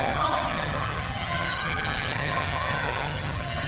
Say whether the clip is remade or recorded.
remade